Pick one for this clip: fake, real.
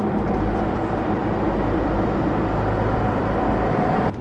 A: fake